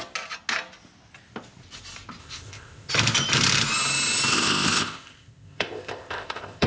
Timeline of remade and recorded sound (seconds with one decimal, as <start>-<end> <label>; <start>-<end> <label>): 0.0-2.2 recorded; 2.2-2.9 remade; 2.9-4.3 recorded; 4.3-6.7 remade